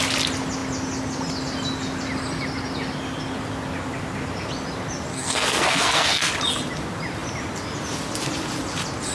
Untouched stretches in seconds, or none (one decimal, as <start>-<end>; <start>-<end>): 0.0-5.1; 6.3-9.1